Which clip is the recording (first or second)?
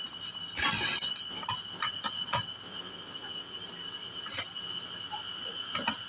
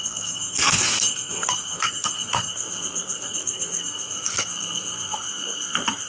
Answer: first